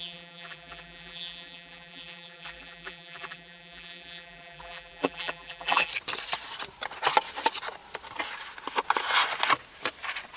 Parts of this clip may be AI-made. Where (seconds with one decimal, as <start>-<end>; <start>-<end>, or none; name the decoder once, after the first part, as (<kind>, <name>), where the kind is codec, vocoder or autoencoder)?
0.0-5.9 (vocoder, BigVGAN v2)